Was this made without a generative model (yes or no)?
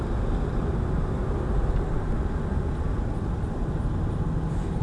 yes